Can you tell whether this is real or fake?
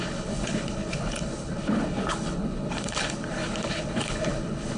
fake